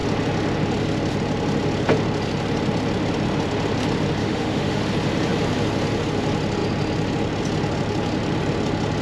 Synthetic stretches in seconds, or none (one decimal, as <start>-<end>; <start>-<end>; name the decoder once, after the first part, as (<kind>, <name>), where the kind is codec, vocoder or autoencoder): 4.2-4.8 (autoencoder, DAC-VAE)